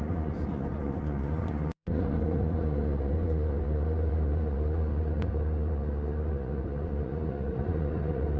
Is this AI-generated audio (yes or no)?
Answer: yes